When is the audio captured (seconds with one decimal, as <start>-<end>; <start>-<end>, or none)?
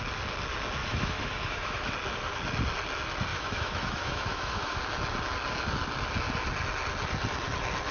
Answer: 0.0-0.8; 1.9-3.3; 4.8-7.9